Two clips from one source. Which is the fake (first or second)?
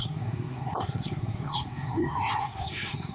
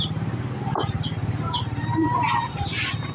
first